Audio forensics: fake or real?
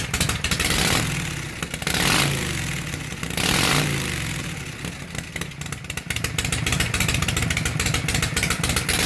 real